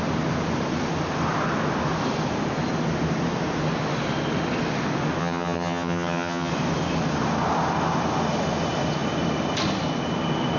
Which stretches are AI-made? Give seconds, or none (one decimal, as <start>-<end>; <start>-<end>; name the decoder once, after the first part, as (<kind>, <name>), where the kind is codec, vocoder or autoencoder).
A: 5.2-6.5 (vocoder, HiFi-GAN)